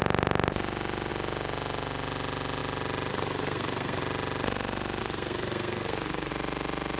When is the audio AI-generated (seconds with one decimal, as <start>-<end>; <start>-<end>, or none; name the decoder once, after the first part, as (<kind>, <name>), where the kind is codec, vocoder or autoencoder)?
3.1-4.0 (codec, SNAC); 5.0-6.3